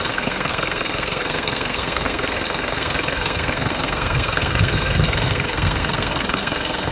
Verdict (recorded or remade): remade